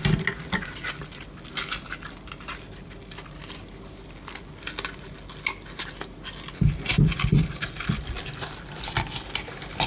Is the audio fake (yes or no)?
no